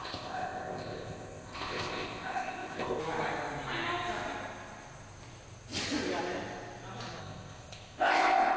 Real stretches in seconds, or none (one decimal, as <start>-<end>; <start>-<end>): 3.0-7.2

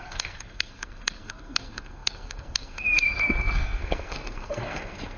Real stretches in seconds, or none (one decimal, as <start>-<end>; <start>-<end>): none